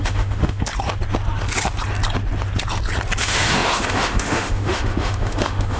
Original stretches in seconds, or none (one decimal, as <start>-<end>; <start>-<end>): 0.7-3.2